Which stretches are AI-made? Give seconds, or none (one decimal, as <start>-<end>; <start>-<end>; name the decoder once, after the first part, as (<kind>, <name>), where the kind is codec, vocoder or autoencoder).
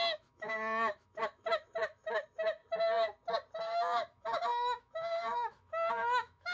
0.0-2.6 (autoencoder, DAC-VAE); 3.6-6.5